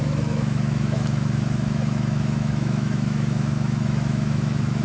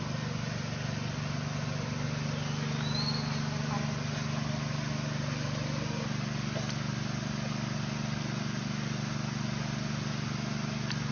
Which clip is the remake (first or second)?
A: first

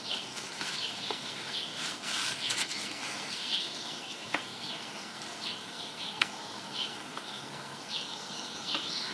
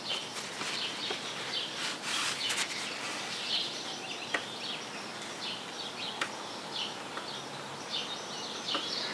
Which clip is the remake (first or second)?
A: first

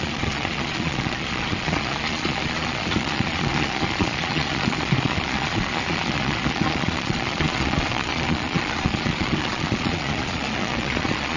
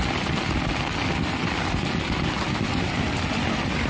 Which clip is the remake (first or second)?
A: first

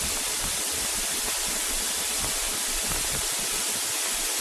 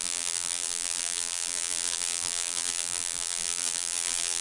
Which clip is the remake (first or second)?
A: second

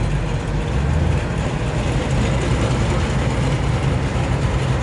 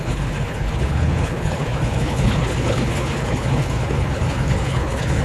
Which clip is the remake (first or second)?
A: second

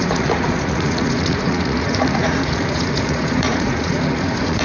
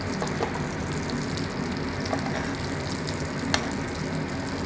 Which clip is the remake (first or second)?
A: first